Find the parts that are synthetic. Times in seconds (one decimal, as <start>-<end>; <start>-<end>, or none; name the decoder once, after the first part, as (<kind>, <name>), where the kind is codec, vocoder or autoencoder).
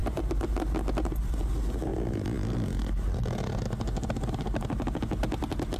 0.0-0.5 (vocoder, BigVGAN v2)